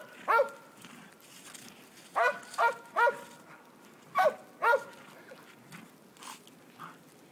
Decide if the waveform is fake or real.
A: real